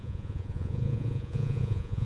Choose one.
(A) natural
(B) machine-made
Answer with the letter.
B